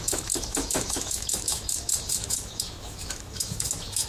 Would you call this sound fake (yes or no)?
yes